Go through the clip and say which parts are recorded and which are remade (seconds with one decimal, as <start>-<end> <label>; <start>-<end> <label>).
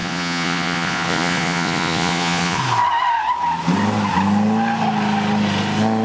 0.0-2.6 remade; 2.6-6.0 recorded